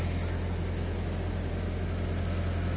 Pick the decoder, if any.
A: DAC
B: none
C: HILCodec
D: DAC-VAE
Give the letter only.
B